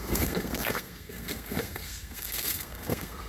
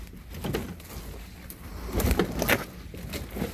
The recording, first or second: second